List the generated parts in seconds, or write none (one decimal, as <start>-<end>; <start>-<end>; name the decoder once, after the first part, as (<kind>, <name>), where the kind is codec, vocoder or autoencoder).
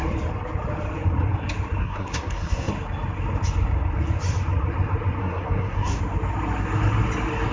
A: 1.8-2.7 (codec, SNAC); 5.2-6.0